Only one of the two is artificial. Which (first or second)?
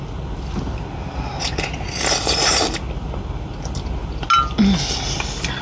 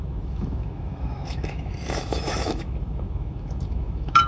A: second